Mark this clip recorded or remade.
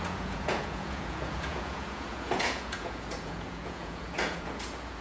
remade